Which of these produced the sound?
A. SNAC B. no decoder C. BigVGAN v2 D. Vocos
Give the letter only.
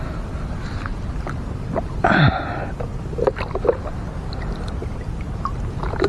B